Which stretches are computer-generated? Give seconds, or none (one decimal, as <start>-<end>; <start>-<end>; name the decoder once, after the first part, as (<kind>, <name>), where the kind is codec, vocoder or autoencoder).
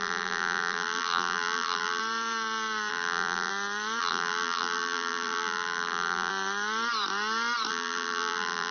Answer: 0.0-2.0 (vocoder, BigVGAN v2); 2.9-3.5; 4.0-6.3; 7.7-8.7